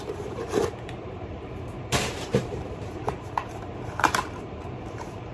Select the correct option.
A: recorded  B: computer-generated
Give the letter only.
B